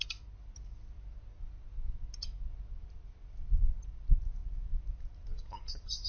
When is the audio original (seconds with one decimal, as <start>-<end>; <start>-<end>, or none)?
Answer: 0.0-6.1